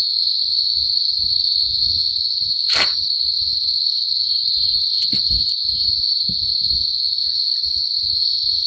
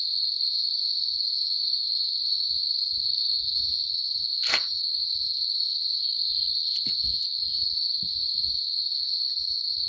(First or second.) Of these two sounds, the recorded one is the second